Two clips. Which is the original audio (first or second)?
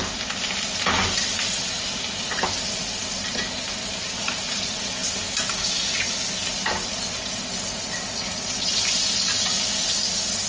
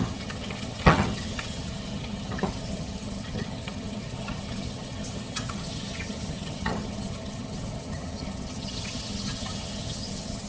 first